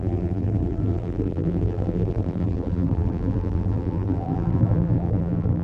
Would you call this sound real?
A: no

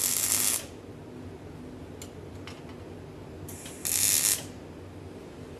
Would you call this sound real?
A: yes